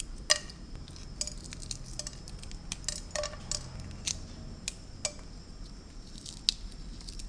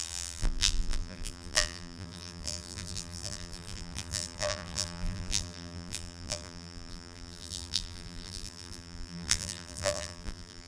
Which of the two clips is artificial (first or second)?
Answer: second